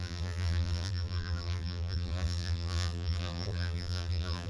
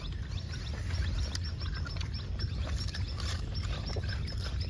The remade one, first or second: first